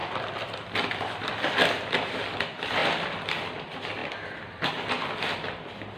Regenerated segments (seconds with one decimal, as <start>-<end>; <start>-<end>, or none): none